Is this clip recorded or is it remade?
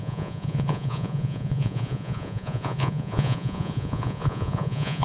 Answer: remade